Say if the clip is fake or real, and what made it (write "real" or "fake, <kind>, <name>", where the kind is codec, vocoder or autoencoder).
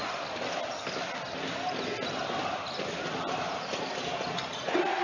real